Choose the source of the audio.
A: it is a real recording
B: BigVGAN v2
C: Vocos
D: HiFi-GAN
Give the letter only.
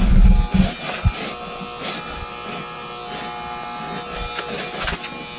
A